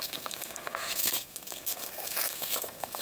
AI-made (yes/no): yes